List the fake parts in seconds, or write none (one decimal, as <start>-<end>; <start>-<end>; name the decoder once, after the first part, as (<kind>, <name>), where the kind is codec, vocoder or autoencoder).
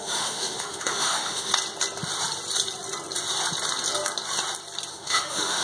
0.0-1.5 (autoencoder, DAC-VAE); 4.9-5.6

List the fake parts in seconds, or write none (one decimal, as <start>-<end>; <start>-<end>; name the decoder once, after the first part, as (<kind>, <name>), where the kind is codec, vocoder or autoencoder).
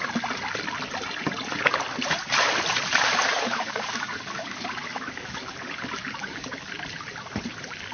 3.3-6.7 (codec, DAC)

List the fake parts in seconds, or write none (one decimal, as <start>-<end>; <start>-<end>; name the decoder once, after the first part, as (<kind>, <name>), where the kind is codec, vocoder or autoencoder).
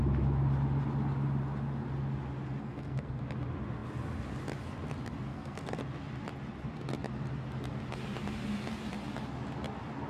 2.6-3.2 (codec, SNAC); 5.3-5.8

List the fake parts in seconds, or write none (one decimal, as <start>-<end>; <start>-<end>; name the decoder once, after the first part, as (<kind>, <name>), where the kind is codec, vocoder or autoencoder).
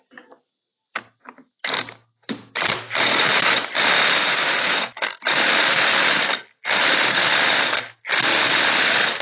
4.2-4.9 (vocoder, Vocos)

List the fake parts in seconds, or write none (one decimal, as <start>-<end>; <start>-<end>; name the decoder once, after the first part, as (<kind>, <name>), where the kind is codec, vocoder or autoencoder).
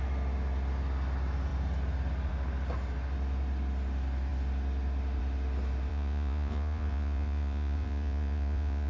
5.9-8.9 (vocoder, Vocos)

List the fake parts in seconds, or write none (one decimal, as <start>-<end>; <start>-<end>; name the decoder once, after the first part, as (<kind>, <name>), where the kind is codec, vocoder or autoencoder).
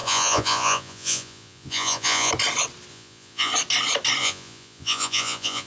0.0-2.3 (vocoder, Vocos); 2.9-3.5; 4.2-5.7